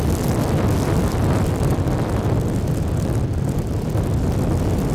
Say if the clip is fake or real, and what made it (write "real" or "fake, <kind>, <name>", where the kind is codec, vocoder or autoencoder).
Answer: real